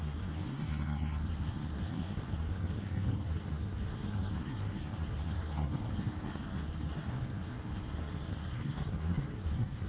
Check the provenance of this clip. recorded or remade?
remade